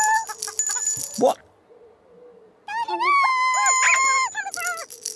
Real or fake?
real